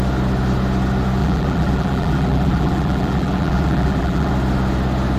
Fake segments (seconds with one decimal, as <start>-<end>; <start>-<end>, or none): 1.2-4.3